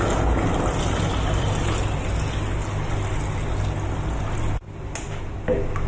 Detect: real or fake real